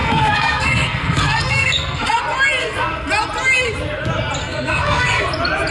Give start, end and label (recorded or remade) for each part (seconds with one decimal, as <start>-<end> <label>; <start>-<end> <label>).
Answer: 0.0-2.2 remade; 2.2-2.6 recorded; 2.6-3.1 remade; 3.1-4.4 recorded; 4.4-5.2 remade; 5.2-5.7 recorded